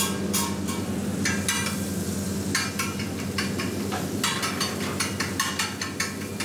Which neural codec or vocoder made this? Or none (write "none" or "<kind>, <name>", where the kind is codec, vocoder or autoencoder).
none